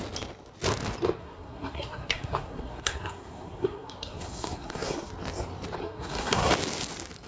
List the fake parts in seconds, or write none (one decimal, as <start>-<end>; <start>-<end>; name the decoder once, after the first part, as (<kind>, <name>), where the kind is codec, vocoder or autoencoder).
1.2-5.1 (codec, SNAC); 5.8-6.5